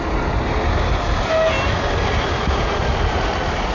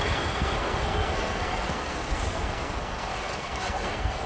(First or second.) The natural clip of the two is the first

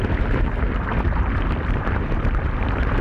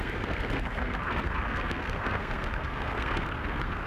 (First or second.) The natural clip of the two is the first